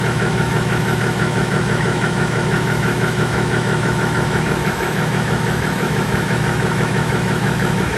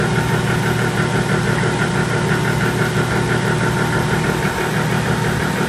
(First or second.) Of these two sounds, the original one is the second